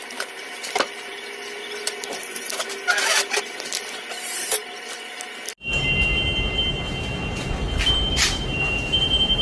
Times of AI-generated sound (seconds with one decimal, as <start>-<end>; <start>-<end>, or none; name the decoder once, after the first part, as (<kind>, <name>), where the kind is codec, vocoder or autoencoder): 0.0-4.6 (vocoder, BigVGAN v2); 8.1-9.4